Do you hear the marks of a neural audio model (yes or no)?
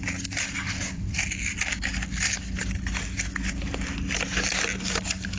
no